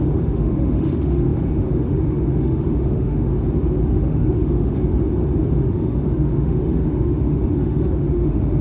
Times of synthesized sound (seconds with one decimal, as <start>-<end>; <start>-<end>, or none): 0.0-3.3; 3.9-4.9; 5.6-8.6